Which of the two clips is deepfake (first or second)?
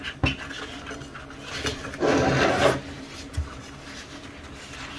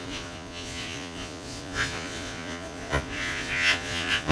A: second